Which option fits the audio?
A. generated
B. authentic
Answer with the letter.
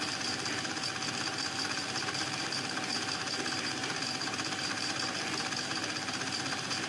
A